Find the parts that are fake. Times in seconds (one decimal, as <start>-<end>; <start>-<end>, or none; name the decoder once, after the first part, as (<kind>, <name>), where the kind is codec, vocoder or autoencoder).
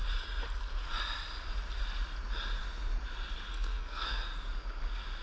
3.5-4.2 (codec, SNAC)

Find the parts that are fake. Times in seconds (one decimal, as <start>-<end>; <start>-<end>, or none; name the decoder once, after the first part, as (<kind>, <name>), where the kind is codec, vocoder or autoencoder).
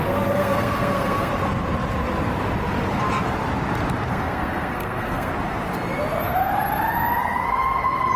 0.0-1.3 (codec, SNAC); 4.1-5.3; 7.2-8.2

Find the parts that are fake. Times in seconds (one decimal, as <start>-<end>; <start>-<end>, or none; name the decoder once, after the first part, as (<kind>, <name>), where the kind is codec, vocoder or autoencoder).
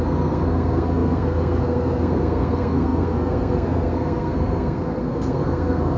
0.0-6.0 (codec, SNAC)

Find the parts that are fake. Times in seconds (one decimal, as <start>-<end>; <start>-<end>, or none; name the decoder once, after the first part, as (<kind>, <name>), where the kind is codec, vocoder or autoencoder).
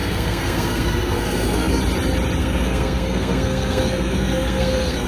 0.0-1.8 (codec, SNAC); 2.4-5.1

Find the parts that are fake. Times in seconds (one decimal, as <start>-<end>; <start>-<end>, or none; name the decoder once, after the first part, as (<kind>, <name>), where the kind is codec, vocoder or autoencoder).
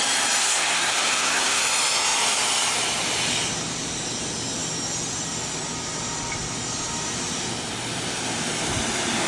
0.4-1.6 (codec, SNAC)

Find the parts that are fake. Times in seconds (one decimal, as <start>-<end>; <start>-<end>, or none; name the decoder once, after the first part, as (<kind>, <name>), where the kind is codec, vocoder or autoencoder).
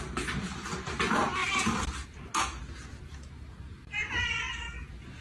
none